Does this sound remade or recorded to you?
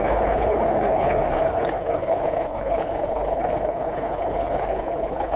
remade